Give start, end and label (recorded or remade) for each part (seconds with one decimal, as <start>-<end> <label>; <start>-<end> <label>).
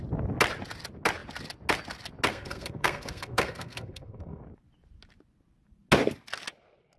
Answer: 0.0-2.3 recorded; 2.3-4.4 remade; 4.4-7.0 recorded